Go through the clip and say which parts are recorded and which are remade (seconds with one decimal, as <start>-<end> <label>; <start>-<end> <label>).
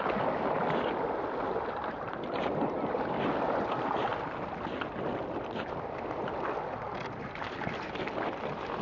0.0-8.8 recorded